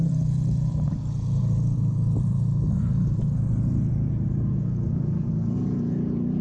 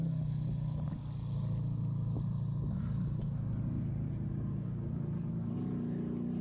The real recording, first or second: second